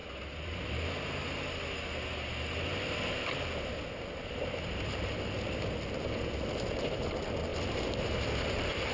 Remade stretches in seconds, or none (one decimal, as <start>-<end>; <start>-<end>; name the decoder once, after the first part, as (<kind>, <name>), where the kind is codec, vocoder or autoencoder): none

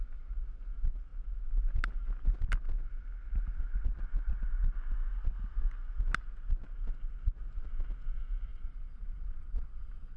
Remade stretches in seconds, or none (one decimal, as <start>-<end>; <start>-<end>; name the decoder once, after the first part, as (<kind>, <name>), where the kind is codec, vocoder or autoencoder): 8.5-10.2 (vocoder, Vocos)

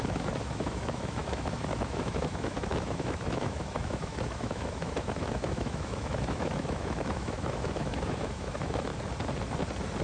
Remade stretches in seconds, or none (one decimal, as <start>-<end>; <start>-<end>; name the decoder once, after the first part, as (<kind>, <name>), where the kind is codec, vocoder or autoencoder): 0.0-8.9 (autoencoder, DAC-VAE)